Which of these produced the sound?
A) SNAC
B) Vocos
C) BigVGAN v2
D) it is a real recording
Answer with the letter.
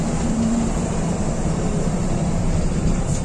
C